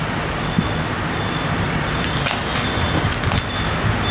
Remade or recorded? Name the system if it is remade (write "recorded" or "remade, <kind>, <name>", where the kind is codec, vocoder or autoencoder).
recorded